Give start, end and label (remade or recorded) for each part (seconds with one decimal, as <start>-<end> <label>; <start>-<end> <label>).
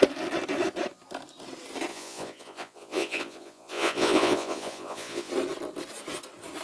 0.0-1.9 recorded; 1.9-5.3 remade; 5.3-6.6 recorded